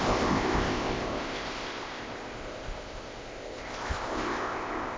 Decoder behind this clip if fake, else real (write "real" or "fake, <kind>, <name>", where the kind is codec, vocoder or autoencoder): fake, codec, ZipCodec